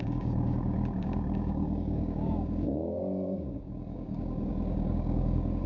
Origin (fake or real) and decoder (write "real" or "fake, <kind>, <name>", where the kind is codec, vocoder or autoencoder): fake, codec, DAC